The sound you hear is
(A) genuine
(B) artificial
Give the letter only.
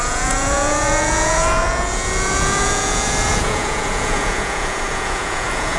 B